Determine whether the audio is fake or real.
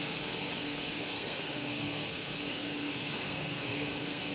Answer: fake